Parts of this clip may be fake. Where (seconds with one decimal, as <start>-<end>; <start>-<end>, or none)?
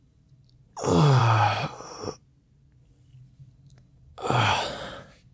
none